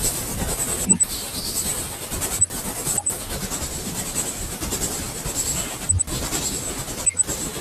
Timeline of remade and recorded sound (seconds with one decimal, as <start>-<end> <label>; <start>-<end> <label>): 0.0-7.6 recorded